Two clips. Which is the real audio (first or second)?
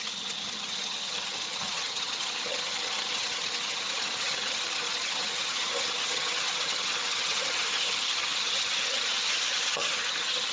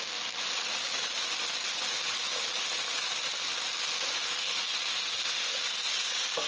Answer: second